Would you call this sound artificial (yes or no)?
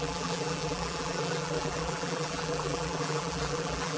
yes